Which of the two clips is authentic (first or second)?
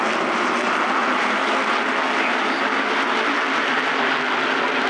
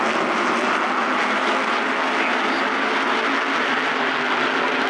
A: second